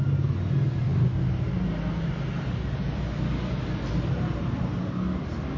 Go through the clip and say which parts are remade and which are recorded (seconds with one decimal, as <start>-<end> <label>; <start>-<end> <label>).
0.0-5.6 recorded